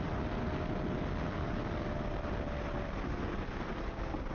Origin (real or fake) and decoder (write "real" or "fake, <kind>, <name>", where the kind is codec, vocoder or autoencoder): real